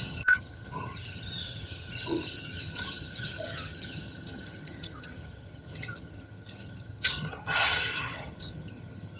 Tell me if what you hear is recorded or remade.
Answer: remade